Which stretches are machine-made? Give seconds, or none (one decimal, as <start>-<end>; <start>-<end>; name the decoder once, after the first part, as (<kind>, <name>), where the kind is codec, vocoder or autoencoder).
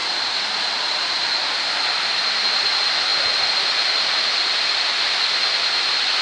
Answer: none